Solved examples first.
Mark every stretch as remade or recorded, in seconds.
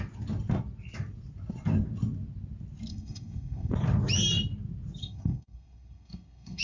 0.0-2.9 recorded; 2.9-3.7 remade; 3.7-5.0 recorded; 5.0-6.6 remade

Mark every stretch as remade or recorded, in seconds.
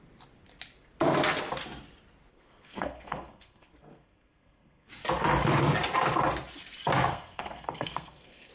0.0-2.3 recorded; 2.3-4.9 remade; 4.9-7.1 recorded; 7.1-8.5 remade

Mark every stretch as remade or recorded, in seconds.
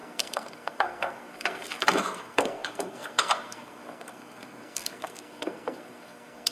0.0-6.5 remade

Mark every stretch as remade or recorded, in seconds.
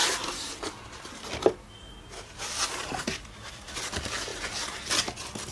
0.0-5.5 recorded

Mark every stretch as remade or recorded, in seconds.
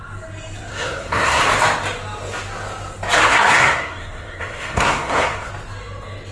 0.0-0.7 recorded; 0.7-1.4 remade; 1.4-3.3 recorded; 3.3-5.5 remade; 5.5-6.3 recorded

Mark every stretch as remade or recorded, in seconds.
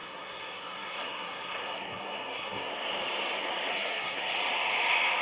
0.0-2.7 remade; 2.7-3.7 recorded; 3.7-4.4 remade; 4.4-5.2 recorded